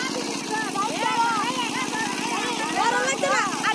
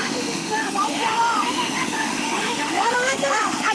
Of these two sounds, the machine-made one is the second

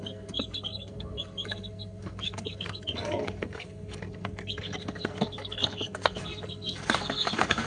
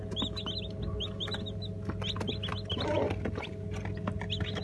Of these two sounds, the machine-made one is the first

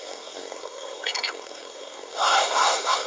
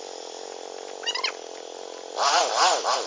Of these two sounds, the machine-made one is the first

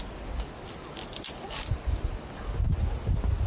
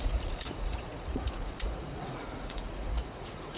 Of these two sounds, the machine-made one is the second